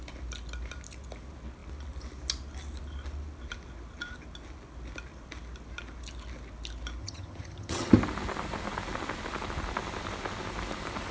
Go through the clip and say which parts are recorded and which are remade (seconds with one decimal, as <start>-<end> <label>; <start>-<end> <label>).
0.0-7.0 recorded; 7.0-7.9 remade; 7.9-11.1 recorded